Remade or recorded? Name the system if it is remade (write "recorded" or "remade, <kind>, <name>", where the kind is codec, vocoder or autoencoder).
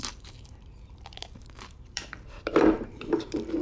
remade, vocoder, BigVGAN v2